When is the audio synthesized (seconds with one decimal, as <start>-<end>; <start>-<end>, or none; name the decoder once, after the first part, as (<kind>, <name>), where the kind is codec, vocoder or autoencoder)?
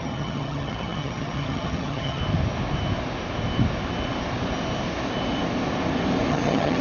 0.0-2.2 (vocoder, HiFi-GAN); 6.3-6.8